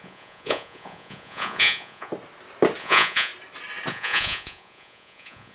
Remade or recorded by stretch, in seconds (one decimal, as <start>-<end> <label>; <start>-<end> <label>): 0.0-2.1 remade; 2.1-2.8 recorded; 2.8-3.3 remade; 3.3-3.9 recorded; 3.9-5.5 remade